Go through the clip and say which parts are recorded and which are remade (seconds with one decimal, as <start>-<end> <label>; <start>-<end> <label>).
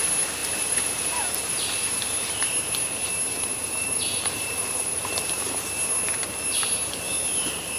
0.0-0.4 recorded; 0.4-1.2 remade; 1.2-3.5 recorded; 3.5-5.5 remade; 5.5-7.8 recorded